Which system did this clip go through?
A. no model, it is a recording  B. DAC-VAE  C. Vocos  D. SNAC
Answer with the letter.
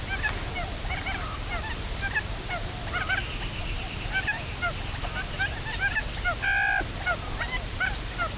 A